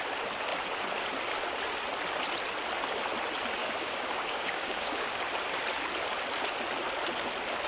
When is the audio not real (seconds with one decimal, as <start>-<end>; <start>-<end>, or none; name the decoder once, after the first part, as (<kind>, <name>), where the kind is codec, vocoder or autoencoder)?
3.6-5.2 (codec, DAC)